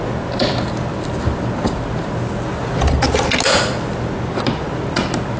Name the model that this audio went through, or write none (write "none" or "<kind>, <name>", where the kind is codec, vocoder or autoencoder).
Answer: none